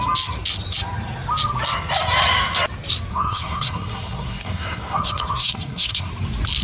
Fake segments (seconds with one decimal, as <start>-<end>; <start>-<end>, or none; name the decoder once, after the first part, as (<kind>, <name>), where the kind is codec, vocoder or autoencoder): 3.1-6.1 (codec, SNAC)